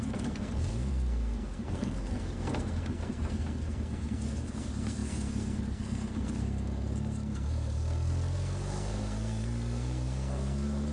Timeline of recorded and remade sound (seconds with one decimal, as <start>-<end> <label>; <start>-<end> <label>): 0.0-10.9 remade

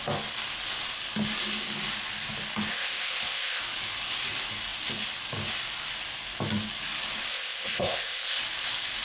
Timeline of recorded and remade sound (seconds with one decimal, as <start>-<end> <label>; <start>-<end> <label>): 0.0-2.7 recorded; 2.7-3.6 remade; 3.6-7.3 recorded; 7.3-8.4 remade; 8.4-9.0 recorded

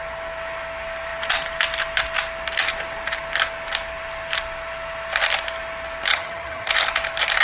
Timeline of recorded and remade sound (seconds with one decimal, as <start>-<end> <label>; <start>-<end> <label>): 0.0-6.1 recorded; 6.1-6.7 remade; 6.7-7.4 recorded

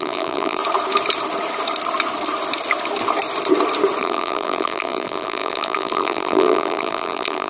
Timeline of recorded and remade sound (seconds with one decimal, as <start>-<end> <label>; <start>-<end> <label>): 0.0-0.6 remade; 0.6-4.0 recorded; 4.0-7.5 remade

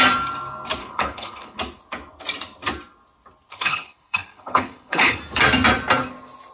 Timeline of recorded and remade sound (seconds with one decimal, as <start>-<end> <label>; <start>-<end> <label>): 0.0-0.8 recorded; 0.8-1.6 remade; 1.6-3.5 recorded; 3.5-5.2 remade; 5.2-6.5 recorded

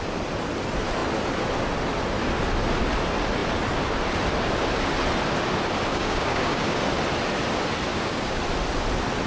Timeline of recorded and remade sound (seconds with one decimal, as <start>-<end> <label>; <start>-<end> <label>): 0.0-5.9 recorded; 5.9-6.8 remade; 6.8-7.9 recorded; 7.9-8.4 remade; 8.4-9.3 recorded